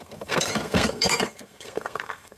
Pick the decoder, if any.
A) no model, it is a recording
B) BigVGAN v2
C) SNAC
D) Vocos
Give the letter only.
C